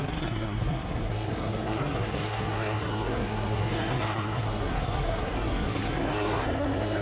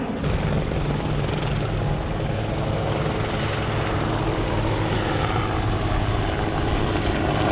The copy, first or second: first